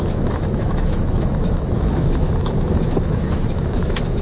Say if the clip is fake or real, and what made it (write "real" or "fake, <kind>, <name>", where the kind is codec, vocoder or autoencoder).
fake, autoencoder, DAC-VAE